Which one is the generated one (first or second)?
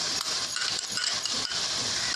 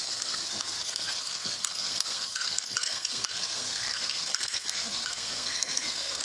second